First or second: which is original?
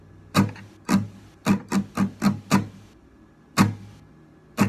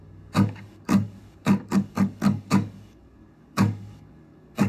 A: first